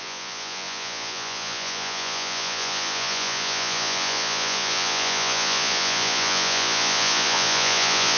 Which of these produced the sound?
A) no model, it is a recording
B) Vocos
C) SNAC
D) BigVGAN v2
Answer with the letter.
B